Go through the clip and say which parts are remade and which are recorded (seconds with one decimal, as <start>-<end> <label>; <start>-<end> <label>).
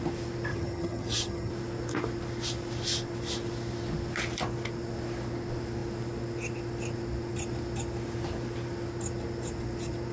0.0-0.5 recorded; 0.5-1.5 remade; 1.5-10.1 recorded